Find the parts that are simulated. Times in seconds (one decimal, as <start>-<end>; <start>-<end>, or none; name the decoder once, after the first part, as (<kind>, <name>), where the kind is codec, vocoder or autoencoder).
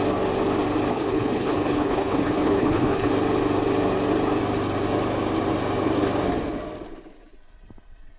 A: 0.9-3.1 (codec, HILCodec)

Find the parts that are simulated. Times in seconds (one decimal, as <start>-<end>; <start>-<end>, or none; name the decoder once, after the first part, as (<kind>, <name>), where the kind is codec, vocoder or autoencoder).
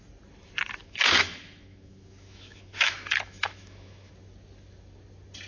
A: 0.8-4.1 (autoencoder, DAC-VAE)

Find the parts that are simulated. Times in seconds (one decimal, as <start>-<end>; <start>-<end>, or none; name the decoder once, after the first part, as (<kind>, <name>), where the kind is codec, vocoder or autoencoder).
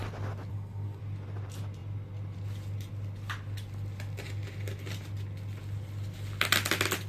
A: 0.5-1.0 (codec, SNAC)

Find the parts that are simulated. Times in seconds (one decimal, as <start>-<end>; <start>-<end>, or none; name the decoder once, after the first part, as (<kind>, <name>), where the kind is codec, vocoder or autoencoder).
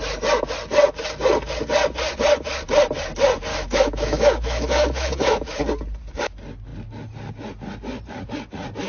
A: 3.5-5.6 (autoencoder, DAC-VAE)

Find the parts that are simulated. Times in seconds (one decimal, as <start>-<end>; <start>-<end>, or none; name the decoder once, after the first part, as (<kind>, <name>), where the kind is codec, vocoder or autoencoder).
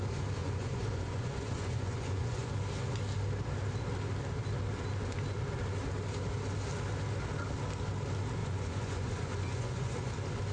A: 0.4-2.5 (vocoder, Vocos); 8.4-10.1